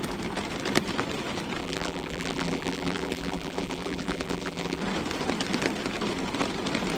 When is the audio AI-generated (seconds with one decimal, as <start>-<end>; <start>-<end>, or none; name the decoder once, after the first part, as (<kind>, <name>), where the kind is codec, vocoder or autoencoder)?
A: 1.6-4.8 (vocoder, BigVGAN v2)